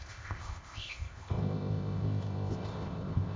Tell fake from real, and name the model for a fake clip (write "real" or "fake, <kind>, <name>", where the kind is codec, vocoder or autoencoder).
fake, codec, ZipCodec